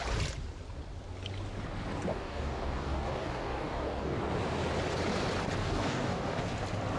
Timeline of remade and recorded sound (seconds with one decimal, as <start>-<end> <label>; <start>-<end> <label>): 0.0-2.1 recorded; 2.1-4.2 remade; 4.2-5.6 recorded; 5.6-6.4 remade; 6.4-7.0 recorded